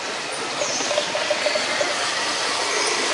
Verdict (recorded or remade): recorded